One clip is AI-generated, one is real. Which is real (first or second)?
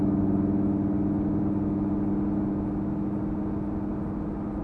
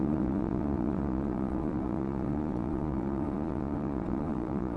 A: first